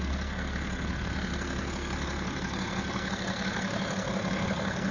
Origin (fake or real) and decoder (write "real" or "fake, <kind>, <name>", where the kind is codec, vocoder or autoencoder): fake, codec, SNAC